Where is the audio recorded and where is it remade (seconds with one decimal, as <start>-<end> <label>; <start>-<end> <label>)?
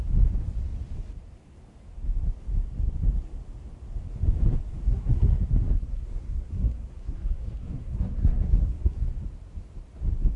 0.0-4.9 recorded; 4.9-9.1 remade; 9.1-10.4 recorded